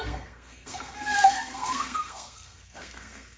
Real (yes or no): no